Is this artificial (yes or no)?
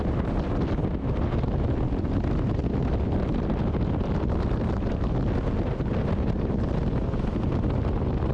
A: no